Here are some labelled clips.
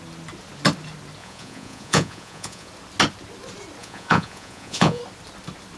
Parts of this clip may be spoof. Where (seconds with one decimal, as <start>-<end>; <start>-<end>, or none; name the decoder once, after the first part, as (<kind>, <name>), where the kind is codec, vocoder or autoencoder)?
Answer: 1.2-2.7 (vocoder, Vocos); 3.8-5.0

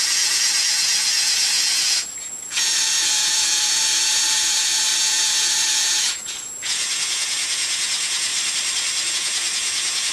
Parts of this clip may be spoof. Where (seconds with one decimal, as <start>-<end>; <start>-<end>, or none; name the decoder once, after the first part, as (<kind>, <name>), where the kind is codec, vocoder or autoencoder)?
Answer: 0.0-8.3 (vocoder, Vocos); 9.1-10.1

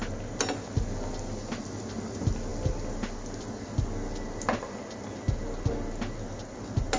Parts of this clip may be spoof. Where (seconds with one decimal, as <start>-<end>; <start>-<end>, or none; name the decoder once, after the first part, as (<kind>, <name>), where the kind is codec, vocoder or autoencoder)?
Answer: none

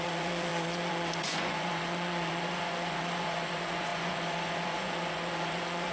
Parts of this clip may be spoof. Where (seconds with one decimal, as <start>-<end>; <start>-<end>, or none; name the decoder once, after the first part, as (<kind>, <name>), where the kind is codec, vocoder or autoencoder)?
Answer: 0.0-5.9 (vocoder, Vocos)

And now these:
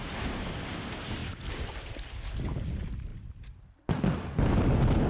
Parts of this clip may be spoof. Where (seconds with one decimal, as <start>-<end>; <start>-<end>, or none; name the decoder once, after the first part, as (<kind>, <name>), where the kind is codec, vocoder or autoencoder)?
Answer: none

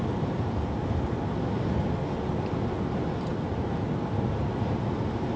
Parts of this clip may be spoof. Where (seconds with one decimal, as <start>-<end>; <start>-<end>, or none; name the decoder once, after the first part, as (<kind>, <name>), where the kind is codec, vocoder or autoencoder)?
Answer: none

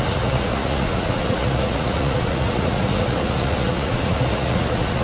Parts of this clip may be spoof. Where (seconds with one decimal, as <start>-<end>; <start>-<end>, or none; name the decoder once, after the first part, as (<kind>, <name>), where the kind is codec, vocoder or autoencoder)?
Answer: 0.0-5.0 (vocoder, Vocos)